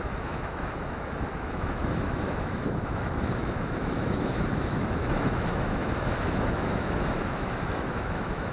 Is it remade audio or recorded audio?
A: remade